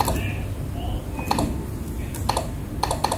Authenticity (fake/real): real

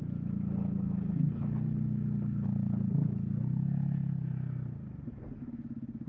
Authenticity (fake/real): real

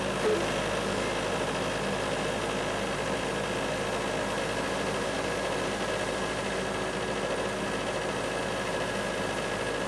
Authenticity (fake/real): real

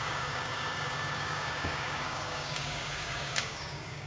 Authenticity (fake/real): fake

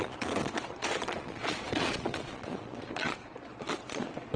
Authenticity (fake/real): fake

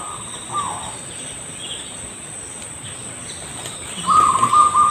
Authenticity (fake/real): real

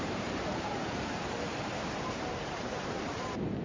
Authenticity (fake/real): fake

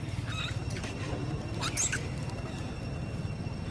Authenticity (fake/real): real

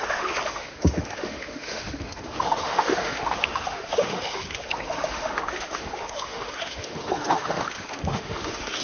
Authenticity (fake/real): fake